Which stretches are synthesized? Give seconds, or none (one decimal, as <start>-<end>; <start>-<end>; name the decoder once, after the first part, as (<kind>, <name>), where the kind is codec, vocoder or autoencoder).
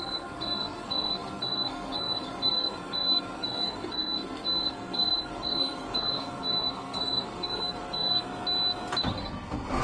0.0-8.3 (codec, SNAC); 9.1-9.8